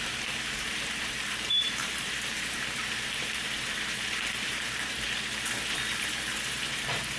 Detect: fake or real fake